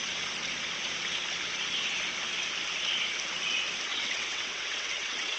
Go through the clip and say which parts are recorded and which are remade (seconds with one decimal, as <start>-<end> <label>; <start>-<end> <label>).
0.0-3.9 recorded; 3.9-5.4 remade